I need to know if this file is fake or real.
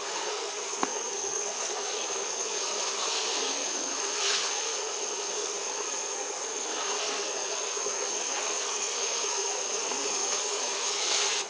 fake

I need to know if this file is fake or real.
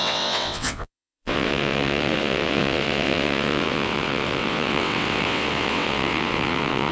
fake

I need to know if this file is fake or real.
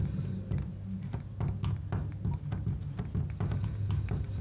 real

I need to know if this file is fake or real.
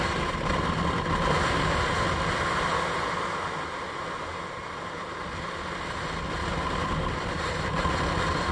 real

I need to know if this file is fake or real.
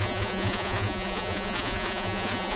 fake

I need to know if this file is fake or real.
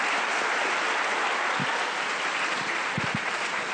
real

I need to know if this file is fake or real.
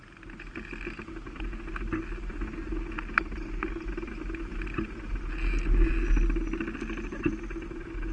real